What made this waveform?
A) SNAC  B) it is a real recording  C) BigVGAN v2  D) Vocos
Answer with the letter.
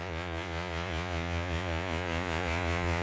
D